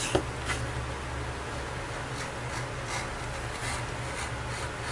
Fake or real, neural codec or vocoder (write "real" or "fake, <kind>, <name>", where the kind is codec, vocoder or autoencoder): real